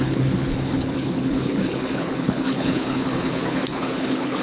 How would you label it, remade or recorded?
remade